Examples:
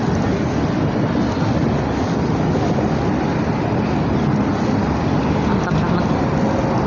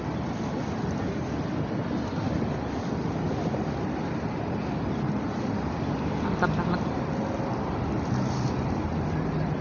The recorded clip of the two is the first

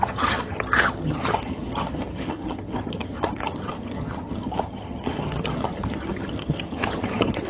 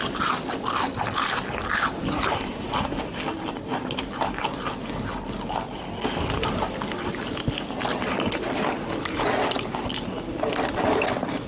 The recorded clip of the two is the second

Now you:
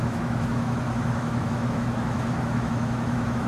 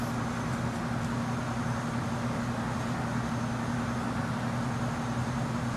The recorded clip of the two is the second